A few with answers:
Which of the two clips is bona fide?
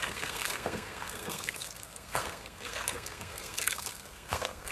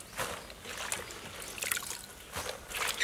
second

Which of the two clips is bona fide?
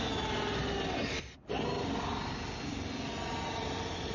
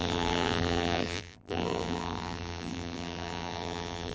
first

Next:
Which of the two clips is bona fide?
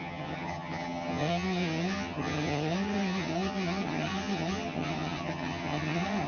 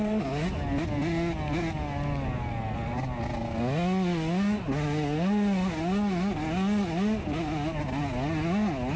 second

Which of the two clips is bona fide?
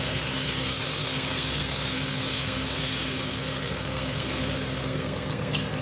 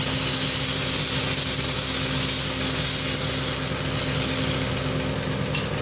second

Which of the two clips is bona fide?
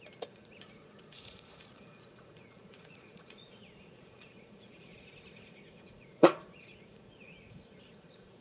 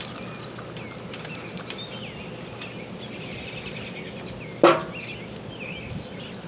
second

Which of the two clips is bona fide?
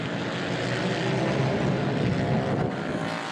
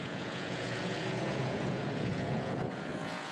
first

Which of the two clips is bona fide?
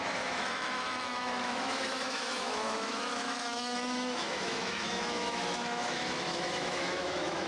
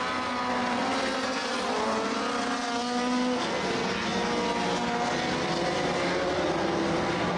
second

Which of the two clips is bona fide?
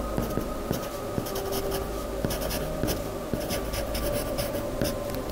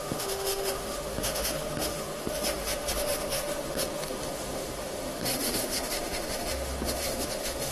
first